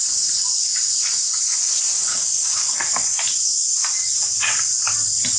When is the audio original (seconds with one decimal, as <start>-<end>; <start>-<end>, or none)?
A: 0.0-2.1; 2.8-5.4